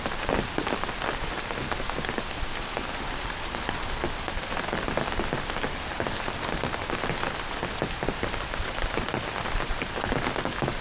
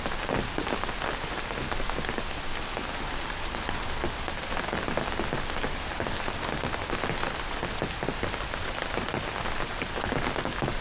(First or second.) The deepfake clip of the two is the first